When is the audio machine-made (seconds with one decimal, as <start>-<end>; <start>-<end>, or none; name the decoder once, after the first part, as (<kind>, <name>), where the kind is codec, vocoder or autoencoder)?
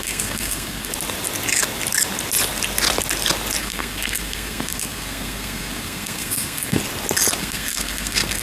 0.0-0.9 (codec, SNAC); 3.6-6.8; 7.4-8.4